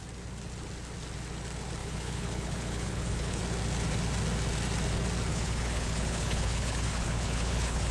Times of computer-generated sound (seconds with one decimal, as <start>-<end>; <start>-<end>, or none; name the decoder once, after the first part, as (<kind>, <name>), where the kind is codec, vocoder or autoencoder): 1.8-3.4 (codec, HILCodec); 5.3-7.9